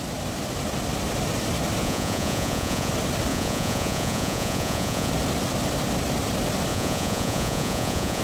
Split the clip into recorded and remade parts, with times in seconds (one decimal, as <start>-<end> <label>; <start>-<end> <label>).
0.0-1.8 recorded; 1.8-2.9 remade; 2.9-3.3 recorded; 3.3-5.1 remade; 5.1-6.7 recorded; 6.7-8.2 remade